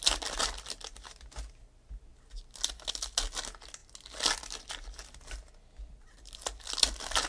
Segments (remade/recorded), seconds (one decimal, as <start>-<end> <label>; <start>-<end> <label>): 0.0-7.3 recorded

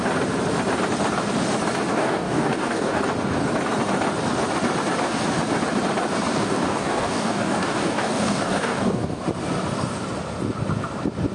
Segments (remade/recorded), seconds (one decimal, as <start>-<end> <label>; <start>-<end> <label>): 0.0-1.9 recorded; 1.9-3.0 remade; 3.0-6.3 recorded; 6.3-9.2 remade; 9.2-11.3 recorded